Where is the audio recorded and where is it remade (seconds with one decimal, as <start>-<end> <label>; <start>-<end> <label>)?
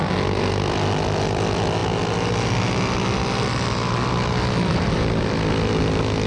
0.0-6.3 recorded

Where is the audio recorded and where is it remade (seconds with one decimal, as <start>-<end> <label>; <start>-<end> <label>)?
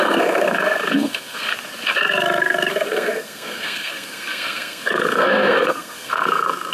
0.0-1.5 remade; 1.5-2.7 recorded; 2.7-6.7 remade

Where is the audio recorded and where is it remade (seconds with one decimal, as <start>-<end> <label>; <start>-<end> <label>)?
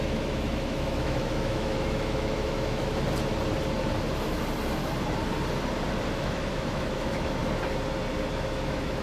0.0-2.9 remade; 2.9-6.1 recorded; 6.1-7.4 remade; 7.4-8.3 recorded; 8.3-9.0 remade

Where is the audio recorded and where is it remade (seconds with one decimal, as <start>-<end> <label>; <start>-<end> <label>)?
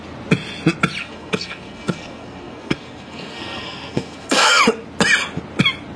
0.0-1.0 recorded; 1.0-4.6 remade; 4.6-6.0 recorded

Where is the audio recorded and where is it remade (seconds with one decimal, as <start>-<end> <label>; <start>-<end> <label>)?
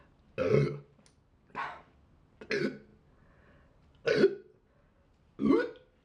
0.0-6.0 recorded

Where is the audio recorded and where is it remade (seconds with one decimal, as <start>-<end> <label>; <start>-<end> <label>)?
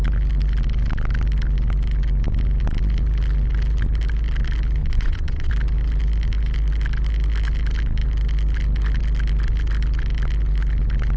0.0-4.8 recorded; 4.8-5.5 remade; 5.5-11.2 recorded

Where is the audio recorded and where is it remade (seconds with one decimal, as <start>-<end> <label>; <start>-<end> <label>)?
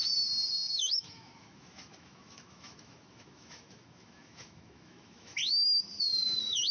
0.0-0.5 recorded; 0.5-5.4 remade; 5.4-6.7 recorded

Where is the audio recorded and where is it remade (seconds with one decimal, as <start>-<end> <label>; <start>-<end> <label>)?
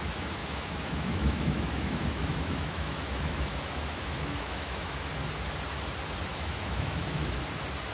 0.0-0.4 recorded; 0.4-5.1 remade; 5.1-6.3 recorded; 6.3-7.4 remade; 7.4-7.9 recorded